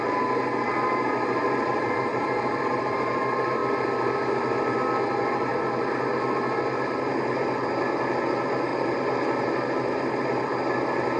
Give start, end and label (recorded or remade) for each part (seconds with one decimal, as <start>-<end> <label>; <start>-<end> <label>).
0.0-2.1 recorded; 2.1-2.9 remade; 2.9-11.2 recorded

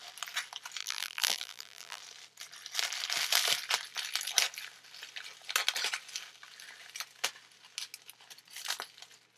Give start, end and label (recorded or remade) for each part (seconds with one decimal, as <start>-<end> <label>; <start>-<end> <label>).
0.0-0.8 recorded; 0.8-2.0 remade; 2.0-9.4 recorded